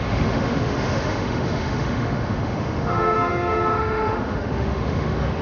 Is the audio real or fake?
fake